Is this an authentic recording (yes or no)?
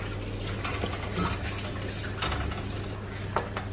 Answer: yes